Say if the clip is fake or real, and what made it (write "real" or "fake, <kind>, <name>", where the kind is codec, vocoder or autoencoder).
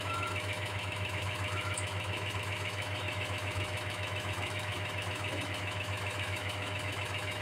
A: fake, autoencoder, DAC-VAE